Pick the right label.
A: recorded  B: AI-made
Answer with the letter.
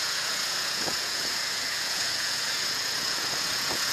B